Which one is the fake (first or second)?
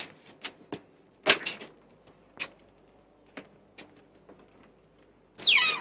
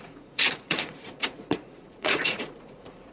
second